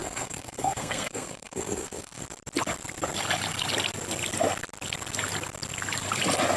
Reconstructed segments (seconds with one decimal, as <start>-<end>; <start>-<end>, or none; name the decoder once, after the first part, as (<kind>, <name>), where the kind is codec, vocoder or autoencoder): 0.0-2.2 (codec, SNAC)